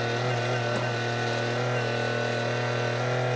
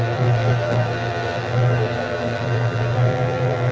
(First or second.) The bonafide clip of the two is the first